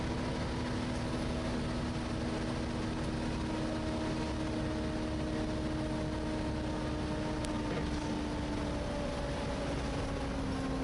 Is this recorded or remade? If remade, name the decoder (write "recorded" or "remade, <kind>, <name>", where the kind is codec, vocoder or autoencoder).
recorded